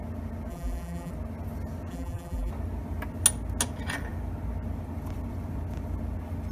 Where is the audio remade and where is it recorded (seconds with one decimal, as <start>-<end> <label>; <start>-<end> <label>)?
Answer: 0.0-0.5 recorded; 0.5-1.1 remade; 1.1-1.9 recorded; 1.9-2.5 remade; 2.5-6.5 recorded